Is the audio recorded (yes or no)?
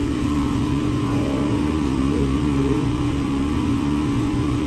no